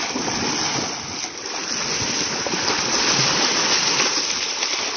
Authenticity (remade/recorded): recorded